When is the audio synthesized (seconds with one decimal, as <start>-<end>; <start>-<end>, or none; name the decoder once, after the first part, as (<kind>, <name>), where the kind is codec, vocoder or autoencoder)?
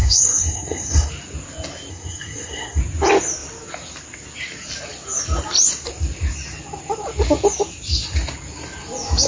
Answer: 0.0-1.1 (codec, SNAC); 1.9-2.8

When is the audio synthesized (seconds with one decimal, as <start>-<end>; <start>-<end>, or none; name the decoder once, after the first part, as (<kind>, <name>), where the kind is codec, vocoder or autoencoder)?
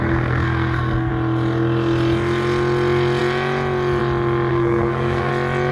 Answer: 0.0-1.1 (codec, SNAC); 4.5-5.3